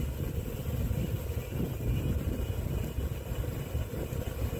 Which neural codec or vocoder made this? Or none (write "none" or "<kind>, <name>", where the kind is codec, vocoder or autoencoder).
none